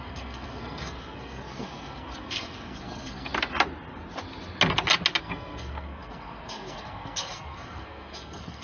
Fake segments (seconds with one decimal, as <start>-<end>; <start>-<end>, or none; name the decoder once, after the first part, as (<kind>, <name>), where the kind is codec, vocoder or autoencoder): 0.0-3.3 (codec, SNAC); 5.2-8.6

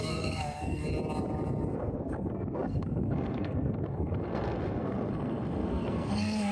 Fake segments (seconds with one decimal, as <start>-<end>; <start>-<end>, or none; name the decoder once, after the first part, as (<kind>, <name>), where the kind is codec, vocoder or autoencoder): 0.0-0.8 (codec, SNAC); 1.7-6.5

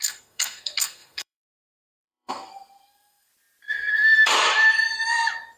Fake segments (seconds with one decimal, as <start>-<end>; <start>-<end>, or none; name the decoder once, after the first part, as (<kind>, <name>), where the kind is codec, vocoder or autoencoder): 0.0-3.3 (codec, SNAC); 3.9-4.3

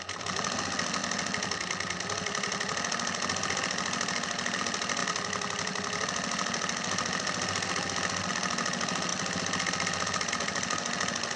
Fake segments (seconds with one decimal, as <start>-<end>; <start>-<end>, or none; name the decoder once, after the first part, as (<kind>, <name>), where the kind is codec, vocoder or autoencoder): none

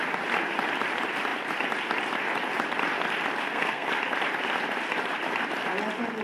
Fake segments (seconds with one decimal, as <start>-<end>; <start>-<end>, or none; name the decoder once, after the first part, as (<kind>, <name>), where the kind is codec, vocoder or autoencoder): 3.4-3.9 (codec, SNAC)

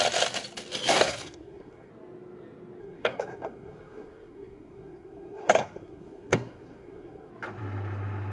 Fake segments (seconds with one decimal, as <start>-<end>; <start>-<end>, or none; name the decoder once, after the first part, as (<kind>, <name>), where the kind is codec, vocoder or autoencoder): 0.9-1.9 (codec, SNAC); 2.8-7.3

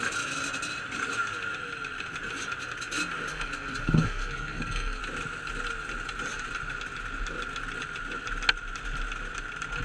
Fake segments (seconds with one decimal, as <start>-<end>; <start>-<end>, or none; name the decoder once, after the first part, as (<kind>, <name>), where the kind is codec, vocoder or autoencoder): 3.3-5.0 (codec, SNAC)